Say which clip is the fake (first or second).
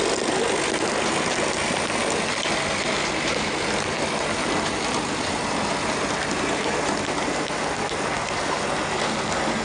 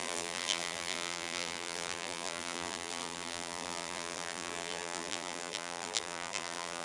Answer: second